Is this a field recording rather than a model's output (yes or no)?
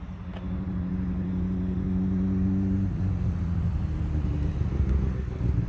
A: yes